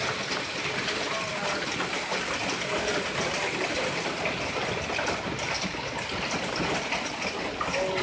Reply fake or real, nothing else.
real